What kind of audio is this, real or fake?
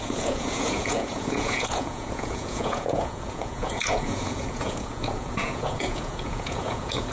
fake